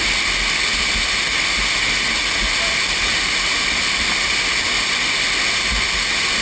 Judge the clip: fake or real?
real